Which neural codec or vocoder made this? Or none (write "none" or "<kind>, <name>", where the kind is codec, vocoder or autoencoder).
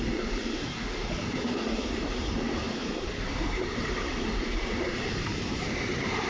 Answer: vocoder, BigVGAN v2